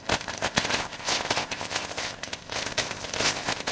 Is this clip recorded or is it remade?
remade